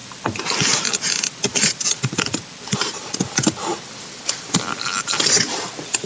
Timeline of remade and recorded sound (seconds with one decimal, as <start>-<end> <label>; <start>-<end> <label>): 0.0-6.1 recorded